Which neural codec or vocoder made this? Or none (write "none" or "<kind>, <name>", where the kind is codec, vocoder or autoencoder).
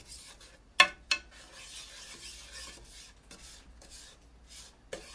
none